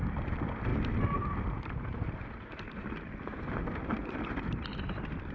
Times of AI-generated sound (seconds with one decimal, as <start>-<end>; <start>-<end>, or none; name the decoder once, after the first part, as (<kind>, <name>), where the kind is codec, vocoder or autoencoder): none